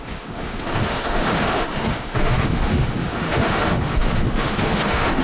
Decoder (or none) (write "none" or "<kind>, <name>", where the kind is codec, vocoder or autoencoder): autoencoder, DAC-VAE